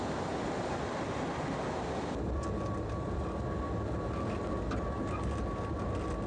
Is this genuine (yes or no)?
yes